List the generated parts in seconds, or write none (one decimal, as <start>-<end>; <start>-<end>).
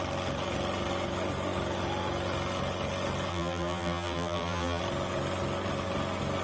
3.3-4.8